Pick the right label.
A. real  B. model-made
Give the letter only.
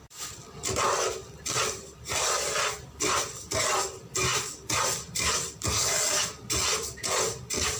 B